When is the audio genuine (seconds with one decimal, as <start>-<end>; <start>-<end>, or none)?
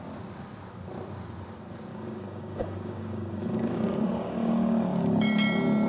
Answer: 0.0-1.9; 5.2-5.9